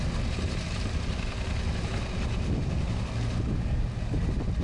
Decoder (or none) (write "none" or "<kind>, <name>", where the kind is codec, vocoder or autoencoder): none